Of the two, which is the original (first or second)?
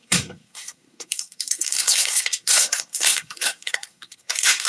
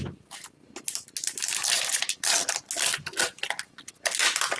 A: second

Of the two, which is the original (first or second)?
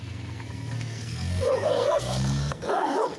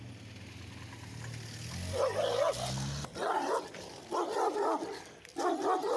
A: second